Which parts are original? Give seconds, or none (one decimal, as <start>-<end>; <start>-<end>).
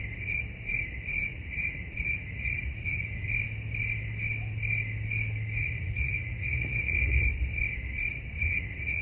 0.0-1.3; 3.3-5.6; 7.2-8.4